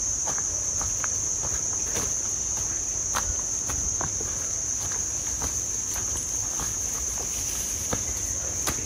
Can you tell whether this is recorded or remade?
recorded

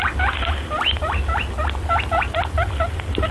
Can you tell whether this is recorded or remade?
recorded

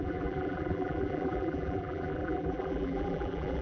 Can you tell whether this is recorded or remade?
remade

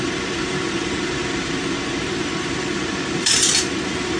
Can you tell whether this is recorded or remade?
remade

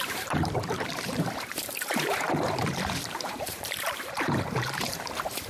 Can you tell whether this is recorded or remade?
remade